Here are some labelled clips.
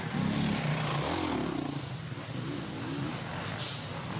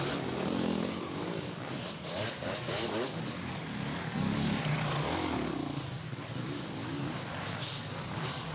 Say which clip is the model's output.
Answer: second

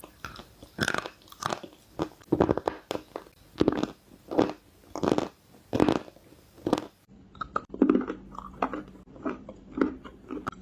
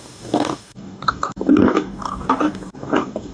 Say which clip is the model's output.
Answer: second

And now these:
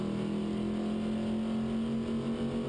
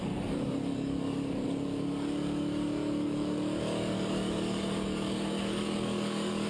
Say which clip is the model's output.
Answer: second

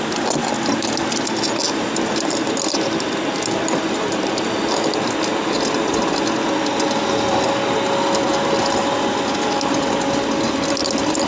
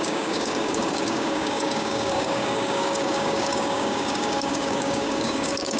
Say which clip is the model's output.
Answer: second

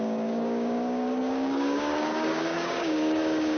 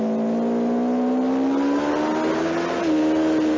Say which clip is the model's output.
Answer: first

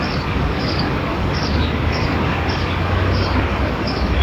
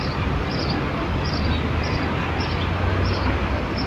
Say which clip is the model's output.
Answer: first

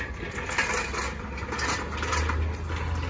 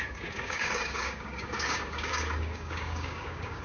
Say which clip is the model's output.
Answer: second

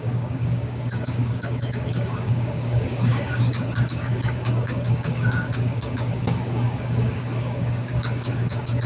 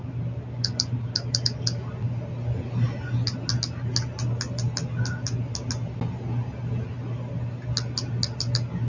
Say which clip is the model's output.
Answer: first